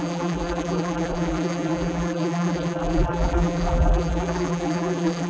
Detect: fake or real fake